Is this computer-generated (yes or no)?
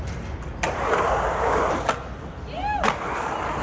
no